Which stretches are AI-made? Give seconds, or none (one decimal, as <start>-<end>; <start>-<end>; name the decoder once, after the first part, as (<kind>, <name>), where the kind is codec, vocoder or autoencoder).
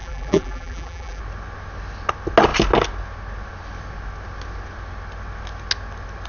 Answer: 0.0-1.2 (vocoder, BigVGAN v2)